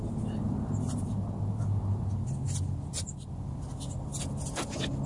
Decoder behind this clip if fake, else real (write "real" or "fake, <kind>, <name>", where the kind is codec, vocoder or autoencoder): real